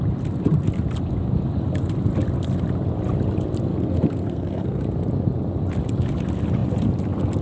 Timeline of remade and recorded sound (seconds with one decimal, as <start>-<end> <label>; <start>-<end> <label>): 0.0-3.7 recorded; 3.7-4.8 remade; 4.8-7.4 recorded